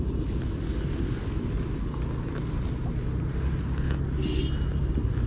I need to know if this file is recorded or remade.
recorded